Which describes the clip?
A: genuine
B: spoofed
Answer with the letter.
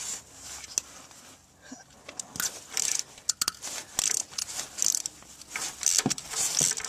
A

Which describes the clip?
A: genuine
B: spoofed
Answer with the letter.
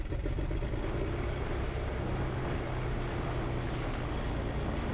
A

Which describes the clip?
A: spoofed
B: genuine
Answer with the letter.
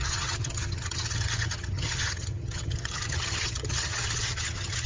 A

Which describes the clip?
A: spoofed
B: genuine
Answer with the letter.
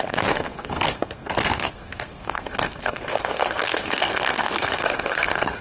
A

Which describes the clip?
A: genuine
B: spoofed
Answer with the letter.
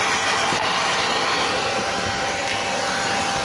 A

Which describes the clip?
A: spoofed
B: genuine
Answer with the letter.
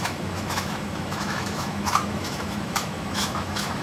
A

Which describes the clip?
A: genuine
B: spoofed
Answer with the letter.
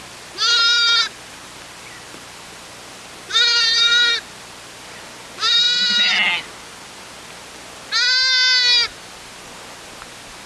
A